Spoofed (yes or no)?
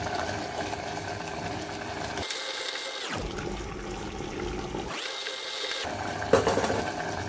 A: no